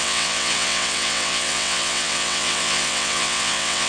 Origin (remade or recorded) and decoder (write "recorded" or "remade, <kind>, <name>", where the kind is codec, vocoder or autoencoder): remade, vocoder, WaveNeXt